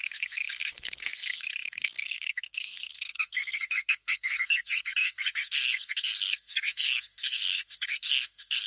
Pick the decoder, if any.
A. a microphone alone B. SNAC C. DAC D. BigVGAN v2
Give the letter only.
B